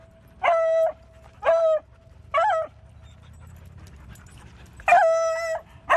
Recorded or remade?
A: recorded